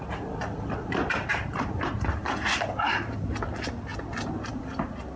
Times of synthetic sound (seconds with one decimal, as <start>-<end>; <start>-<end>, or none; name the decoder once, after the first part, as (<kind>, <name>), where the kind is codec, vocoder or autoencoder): 1.3-3.2 (vocoder, BigVGAN v2)